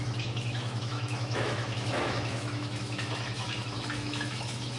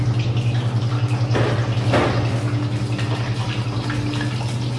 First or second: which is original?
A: second